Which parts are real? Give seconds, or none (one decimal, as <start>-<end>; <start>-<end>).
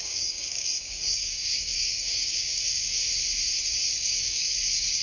3.0-3.6